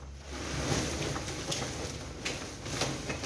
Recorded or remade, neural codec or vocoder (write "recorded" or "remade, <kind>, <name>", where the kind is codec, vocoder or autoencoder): recorded